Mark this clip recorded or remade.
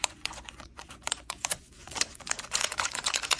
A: remade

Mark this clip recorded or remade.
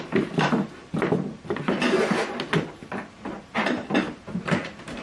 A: remade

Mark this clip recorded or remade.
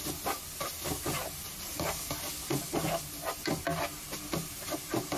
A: recorded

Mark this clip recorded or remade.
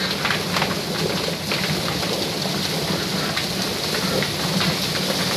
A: recorded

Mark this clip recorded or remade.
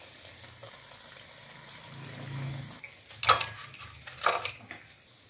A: recorded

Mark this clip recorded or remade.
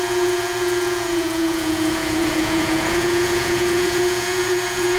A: remade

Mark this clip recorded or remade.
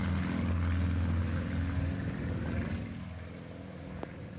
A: recorded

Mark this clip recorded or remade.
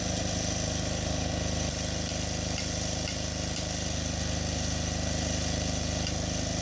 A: recorded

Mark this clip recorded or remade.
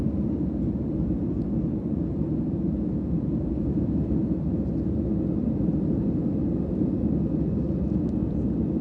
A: recorded